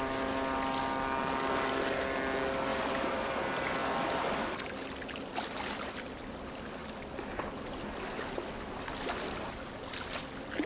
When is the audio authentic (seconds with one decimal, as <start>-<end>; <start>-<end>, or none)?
0.0-2.7; 3.3-10.7